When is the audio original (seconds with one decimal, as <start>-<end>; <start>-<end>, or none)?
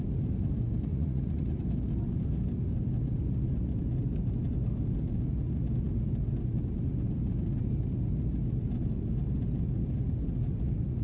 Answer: 0.0-0.9; 1.6-11.0